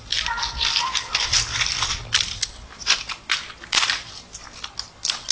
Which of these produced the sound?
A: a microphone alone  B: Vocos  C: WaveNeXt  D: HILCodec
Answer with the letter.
A